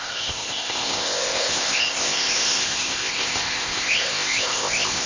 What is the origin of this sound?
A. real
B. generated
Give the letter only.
B